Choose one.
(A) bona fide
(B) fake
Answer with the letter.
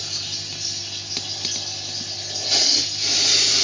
A